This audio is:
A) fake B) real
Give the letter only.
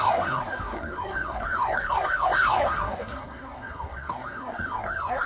A